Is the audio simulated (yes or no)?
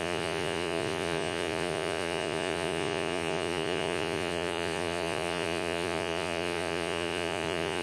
yes